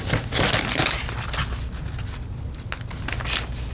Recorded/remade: recorded